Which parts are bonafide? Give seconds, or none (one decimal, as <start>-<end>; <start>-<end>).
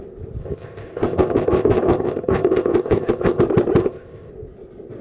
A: 0.0-0.4; 3.4-3.8; 4.3-5.0